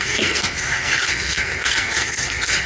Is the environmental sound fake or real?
fake